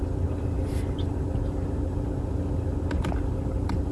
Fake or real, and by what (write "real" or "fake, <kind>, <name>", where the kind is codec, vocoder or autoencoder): real